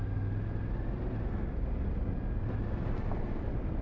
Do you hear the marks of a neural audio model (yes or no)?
no